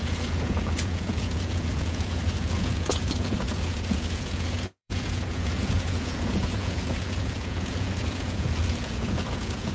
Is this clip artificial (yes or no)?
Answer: yes